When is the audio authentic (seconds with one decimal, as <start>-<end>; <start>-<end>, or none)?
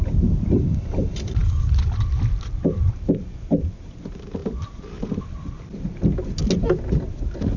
0.5-4.4; 5.2-7.6